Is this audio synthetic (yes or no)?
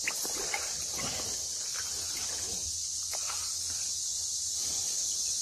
no